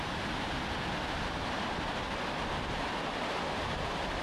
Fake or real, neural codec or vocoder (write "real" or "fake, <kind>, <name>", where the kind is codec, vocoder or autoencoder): real